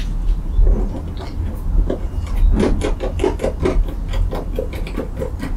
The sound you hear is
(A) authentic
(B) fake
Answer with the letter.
A